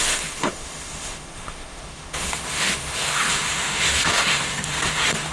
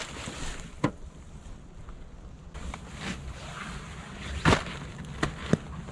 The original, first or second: second